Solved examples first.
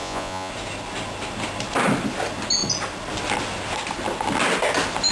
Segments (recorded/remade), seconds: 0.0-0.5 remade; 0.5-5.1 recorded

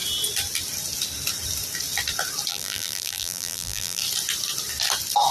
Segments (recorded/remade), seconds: 0.0-2.5 recorded; 2.5-4.0 remade; 4.0-5.3 recorded

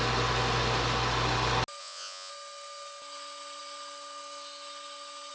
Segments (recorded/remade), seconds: 0.0-1.8 recorded; 1.8-2.3 remade; 2.3-5.3 recorded

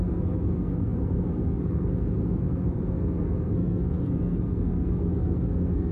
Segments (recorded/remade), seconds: 0.0-5.9 remade